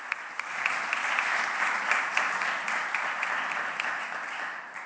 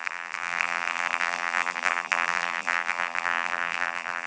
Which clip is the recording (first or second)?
first